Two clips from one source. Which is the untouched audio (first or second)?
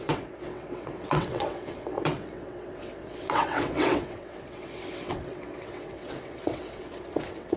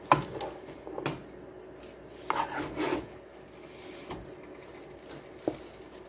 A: second